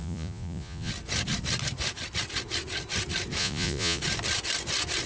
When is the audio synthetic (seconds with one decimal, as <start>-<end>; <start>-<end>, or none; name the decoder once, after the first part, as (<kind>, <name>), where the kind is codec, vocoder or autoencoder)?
0.0-0.9 (vocoder, Vocos); 3.4-4.0